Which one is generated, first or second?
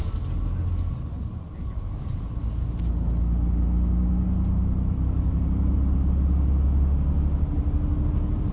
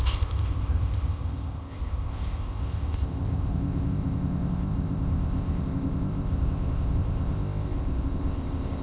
second